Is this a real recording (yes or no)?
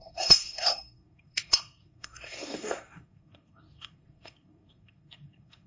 no